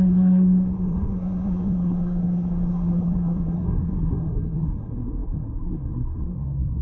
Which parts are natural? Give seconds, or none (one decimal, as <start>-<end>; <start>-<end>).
none